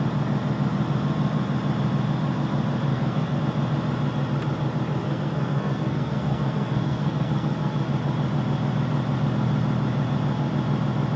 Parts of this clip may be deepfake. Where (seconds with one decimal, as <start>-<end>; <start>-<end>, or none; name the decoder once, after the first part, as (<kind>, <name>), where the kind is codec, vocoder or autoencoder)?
2.9-3.4 (codec, SNAC); 5.0-7.9